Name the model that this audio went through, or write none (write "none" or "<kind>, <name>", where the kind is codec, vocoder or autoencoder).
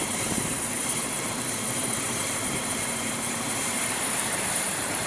vocoder, BigVGAN v2